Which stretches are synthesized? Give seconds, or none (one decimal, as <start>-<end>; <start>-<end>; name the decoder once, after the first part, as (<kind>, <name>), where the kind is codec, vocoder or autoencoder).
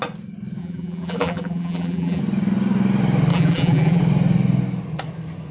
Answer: 0.6-2.2 (vocoder, BigVGAN v2); 3.3-4.0